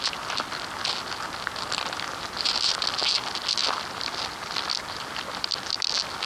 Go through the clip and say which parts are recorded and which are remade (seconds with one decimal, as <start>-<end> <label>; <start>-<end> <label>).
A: 0.0-6.3 recorded